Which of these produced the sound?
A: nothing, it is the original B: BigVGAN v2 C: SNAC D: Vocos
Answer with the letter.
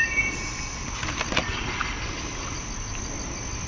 A